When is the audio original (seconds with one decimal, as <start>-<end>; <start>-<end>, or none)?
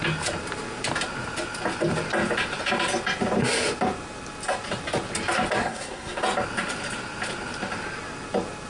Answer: 0.0-5.6; 6.2-8.7